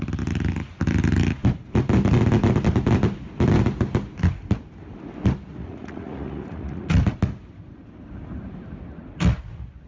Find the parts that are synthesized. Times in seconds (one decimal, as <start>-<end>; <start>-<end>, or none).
5.6-6.9